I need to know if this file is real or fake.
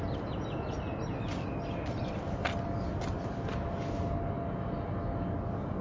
real